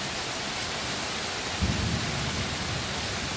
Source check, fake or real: real